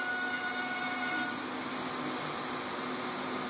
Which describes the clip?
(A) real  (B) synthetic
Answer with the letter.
A